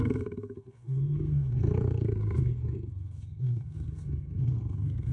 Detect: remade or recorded remade